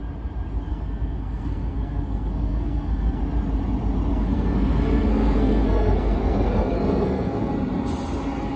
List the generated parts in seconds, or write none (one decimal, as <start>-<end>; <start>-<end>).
0.7-3.2; 4.1-7.5